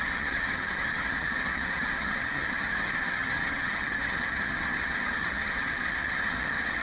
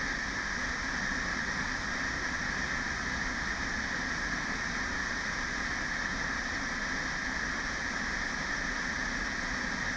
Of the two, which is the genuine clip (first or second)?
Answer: second